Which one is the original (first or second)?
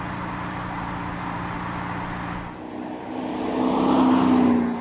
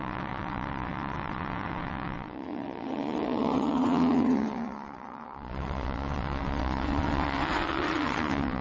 first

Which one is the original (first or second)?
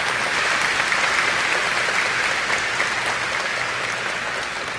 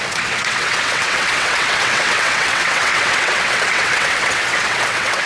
first